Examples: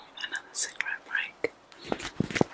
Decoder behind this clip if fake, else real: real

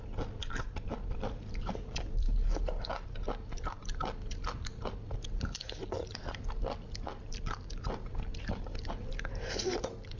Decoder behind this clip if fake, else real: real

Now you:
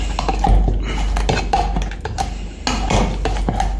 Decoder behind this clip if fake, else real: real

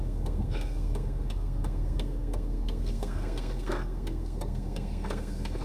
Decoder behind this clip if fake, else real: fake, codec, SNAC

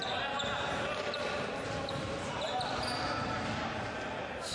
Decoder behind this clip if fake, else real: real